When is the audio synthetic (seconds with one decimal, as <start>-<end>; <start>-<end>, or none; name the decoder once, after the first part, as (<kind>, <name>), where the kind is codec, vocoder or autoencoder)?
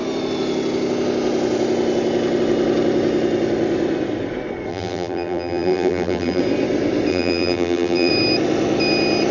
4.7-6.4 (vocoder, BigVGAN v2); 7.1-8.1